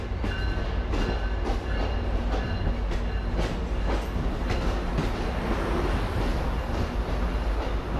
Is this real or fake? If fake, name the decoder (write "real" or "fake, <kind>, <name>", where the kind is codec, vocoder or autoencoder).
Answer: real